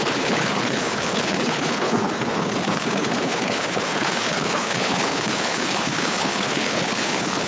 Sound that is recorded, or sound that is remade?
remade